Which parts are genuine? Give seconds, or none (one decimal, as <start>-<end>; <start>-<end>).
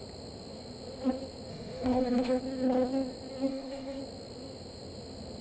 0.0-1.5; 2.4-3.5; 4.0-5.4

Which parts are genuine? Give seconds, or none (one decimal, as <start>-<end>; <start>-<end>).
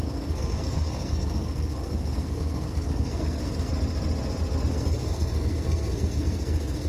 3.7-4.7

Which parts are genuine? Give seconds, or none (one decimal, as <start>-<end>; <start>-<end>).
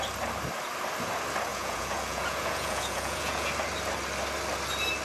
0.0-1.5; 3.5-5.0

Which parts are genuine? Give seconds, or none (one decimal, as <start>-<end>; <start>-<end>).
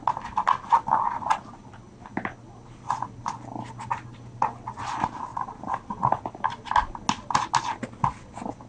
0.0-8.7